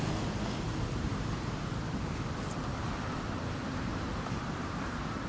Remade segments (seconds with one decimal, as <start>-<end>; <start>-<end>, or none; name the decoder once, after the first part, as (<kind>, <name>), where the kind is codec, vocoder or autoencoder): 1.1-1.8 (vocoder, BigVGAN v2); 3.9-5.3